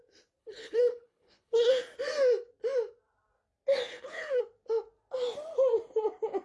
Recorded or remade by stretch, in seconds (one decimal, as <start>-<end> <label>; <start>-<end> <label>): 0.0-0.4 recorded; 0.4-1.7 remade; 1.7-3.9 recorded; 3.9-4.4 remade; 4.4-6.4 recorded